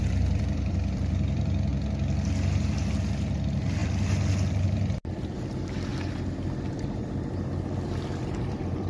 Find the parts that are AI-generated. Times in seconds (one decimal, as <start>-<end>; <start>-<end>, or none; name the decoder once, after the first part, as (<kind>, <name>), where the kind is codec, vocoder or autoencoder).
0.0-1.7 (vocoder, BigVGAN v2); 2.5-5.9; 6.7-8.9